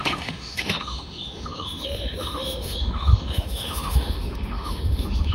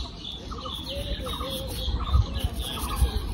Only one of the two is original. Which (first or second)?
second